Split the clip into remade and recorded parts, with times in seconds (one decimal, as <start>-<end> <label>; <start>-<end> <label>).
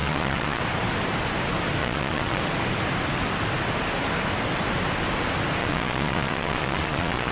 0.0-0.6 remade; 0.6-1.8 recorded; 1.8-2.4 remade; 2.4-5.6 recorded; 5.6-7.3 remade